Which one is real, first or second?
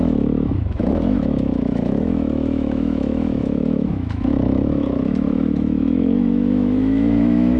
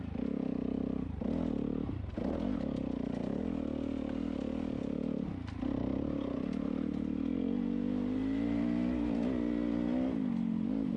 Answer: second